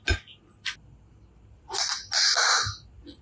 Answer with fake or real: real